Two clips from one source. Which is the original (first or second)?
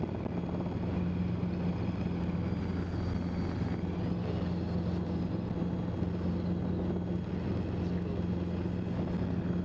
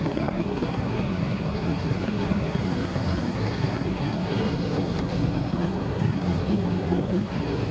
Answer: first